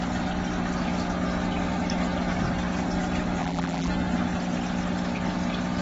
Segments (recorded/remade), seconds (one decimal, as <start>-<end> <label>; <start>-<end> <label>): 0.0-3.4 recorded; 3.4-3.9 remade; 3.9-5.8 recorded